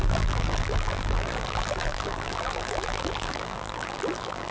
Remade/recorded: remade